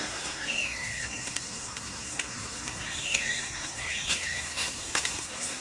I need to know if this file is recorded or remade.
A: remade